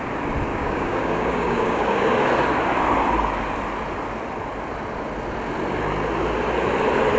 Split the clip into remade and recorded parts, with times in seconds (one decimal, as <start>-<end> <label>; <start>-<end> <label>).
0.0-0.5 recorded; 0.5-2.3 remade; 2.3-7.2 recorded